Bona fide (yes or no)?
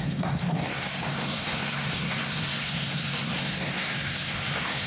no